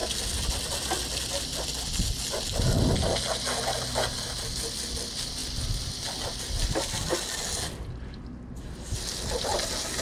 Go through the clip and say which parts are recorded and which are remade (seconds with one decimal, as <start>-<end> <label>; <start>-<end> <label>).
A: 0.0-10.0 recorded